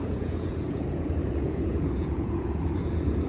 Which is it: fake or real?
fake